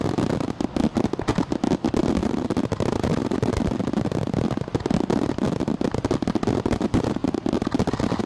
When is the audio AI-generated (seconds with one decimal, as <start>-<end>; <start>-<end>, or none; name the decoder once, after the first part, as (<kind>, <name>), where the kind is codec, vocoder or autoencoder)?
2.2-3.8 (vocoder, BigVGAN v2); 7.2-7.7